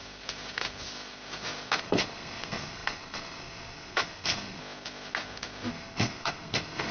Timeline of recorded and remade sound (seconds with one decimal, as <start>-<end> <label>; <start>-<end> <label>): 0.0-1.8 recorded; 1.8-4.6 remade; 4.6-5.7 recorded; 5.7-6.9 remade